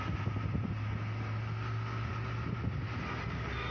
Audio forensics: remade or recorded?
recorded